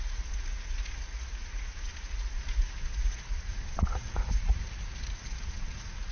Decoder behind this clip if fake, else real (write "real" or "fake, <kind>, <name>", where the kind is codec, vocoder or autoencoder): fake, vocoder, Vocos